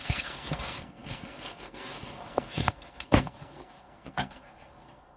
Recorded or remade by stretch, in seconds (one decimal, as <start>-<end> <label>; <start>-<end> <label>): 0.0-5.2 remade